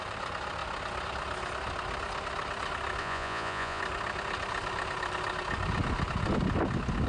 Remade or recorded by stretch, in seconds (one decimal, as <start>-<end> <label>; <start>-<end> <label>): 0.0-3.0 recorded; 3.0-3.8 remade; 3.8-7.1 recorded